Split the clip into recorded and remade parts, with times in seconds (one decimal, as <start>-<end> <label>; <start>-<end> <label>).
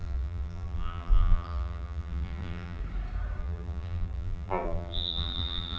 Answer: 0.0-2.8 remade; 2.8-3.4 recorded; 3.4-5.8 remade